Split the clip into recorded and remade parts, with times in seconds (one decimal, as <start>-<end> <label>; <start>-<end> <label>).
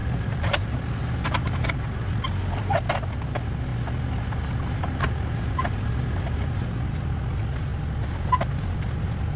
0.0-1.8 remade; 1.8-9.4 recorded